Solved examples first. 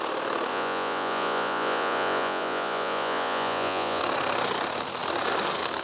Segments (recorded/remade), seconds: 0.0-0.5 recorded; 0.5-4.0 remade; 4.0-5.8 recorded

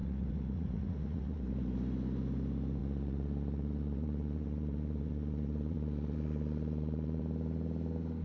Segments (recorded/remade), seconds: 0.0-1.4 remade; 1.4-2.8 recorded; 2.8-7.2 remade; 7.2-8.2 recorded